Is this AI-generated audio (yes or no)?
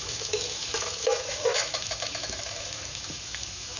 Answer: yes